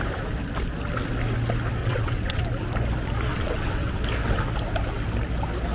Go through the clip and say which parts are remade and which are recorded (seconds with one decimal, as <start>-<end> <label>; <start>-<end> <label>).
0.0-1.8 recorded; 1.8-2.4 remade; 2.4-3.3 recorded; 3.3-4.0 remade; 4.0-5.7 recorded